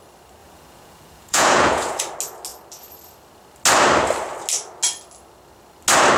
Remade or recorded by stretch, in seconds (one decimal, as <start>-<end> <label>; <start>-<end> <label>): 0.0-0.4 recorded; 0.4-2.0 remade; 2.0-6.2 recorded